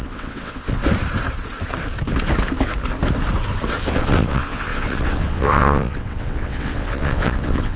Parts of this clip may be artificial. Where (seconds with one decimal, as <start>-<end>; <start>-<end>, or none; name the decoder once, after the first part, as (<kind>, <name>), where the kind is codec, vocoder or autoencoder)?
0.0-0.8 (vocoder, WaveNeXt); 3.8-7.8